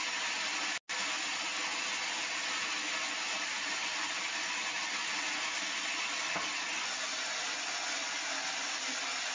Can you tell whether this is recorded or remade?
recorded